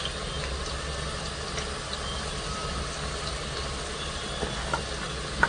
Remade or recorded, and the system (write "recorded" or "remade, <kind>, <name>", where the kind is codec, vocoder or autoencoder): recorded